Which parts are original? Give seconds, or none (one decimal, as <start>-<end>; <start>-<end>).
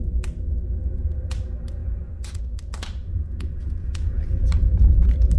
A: 0.0-1.8; 2.4-3.0; 4.2-5.4